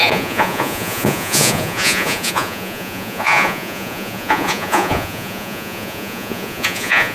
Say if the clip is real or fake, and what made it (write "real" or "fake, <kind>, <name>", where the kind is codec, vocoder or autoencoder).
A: fake, vocoder, Vocos